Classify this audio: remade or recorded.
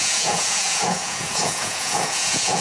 remade